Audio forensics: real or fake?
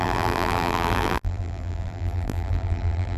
fake